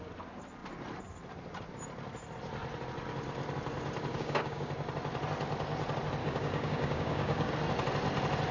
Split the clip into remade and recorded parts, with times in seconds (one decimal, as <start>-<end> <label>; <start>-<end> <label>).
0.0-4.1 recorded; 4.1-4.7 remade; 4.7-6.2 recorded; 6.2-7.5 remade; 7.5-8.5 recorded